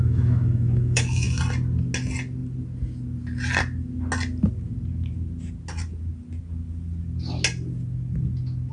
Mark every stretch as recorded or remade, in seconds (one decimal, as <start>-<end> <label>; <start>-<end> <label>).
0.0-1.4 remade; 1.4-8.7 recorded